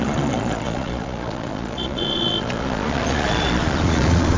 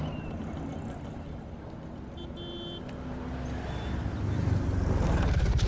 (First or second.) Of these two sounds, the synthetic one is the first